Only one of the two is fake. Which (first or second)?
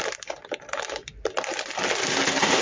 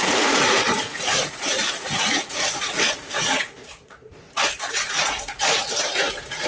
second